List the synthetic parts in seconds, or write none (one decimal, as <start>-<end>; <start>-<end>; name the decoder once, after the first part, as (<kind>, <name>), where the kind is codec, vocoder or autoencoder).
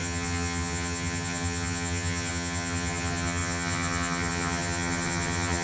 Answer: 0.0-5.6 (vocoder, HiFi-GAN)